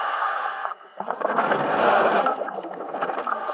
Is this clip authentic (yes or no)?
no